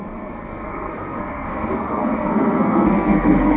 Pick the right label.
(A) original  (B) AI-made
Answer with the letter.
B